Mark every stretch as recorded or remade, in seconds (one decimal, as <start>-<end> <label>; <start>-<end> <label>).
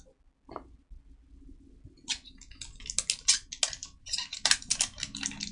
0.0-3.8 recorded; 3.8-5.0 remade; 5.0-5.5 recorded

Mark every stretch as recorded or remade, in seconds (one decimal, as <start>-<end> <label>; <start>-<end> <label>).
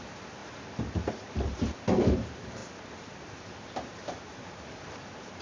0.0-0.4 remade; 0.4-1.1 recorded; 1.1-5.4 remade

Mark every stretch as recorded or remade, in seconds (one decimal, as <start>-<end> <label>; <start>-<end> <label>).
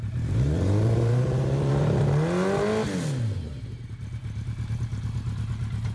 0.0-2.0 remade; 2.0-5.9 recorded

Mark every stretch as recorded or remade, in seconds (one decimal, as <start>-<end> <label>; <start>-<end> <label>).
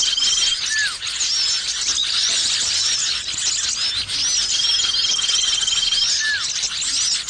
0.0-2.2 recorded; 2.2-2.8 remade; 2.8-7.3 recorded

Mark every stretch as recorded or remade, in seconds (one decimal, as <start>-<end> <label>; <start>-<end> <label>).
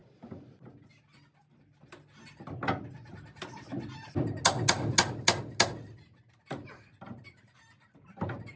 0.0-6.4 recorded; 6.4-7.7 remade; 7.7-8.6 recorded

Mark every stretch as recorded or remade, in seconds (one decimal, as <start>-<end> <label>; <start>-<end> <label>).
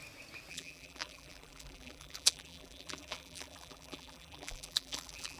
0.0-0.5 recorded; 0.5-5.4 remade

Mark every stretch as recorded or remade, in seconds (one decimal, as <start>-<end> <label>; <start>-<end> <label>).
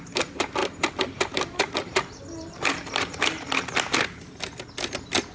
0.0-0.6 recorded; 0.6-3.8 remade; 3.8-5.3 recorded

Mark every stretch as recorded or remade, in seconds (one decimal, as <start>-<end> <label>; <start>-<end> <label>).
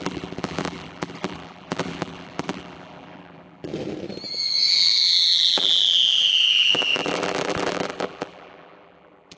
0.0-3.7 remade; 3.7-4.7 recorded; 4.7-9.4 remade